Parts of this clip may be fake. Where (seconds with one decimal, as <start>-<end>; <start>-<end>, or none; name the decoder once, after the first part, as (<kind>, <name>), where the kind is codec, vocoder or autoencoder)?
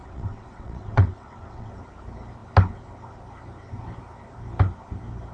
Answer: 0.0-1.7 (vocoder, WaveNeXt)